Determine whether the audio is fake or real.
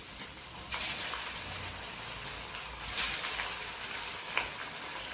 real